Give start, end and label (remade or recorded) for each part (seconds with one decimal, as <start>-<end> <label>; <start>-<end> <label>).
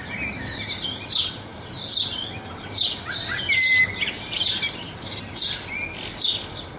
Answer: 0.0-6.8 recorded